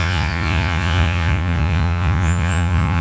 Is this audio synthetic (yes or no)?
yes